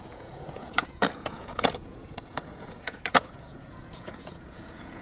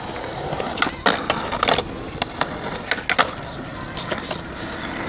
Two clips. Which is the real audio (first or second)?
second